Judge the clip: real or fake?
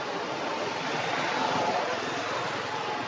real